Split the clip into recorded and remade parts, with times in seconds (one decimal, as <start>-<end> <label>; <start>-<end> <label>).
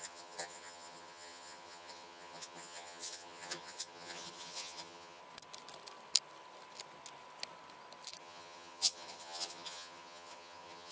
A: 0.0-5.2 remade; 5.2-8.2 recorded; 8.2-10.9 remade